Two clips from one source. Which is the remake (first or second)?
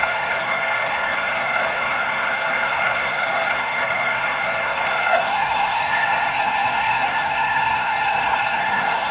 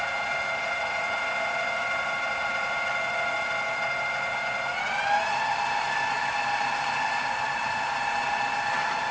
first